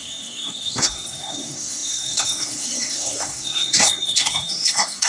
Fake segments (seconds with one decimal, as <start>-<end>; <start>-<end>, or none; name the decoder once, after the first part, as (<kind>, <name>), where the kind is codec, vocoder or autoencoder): 0.0-5.1 (codec, SNAC)